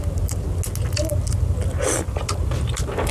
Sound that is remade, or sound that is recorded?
recorded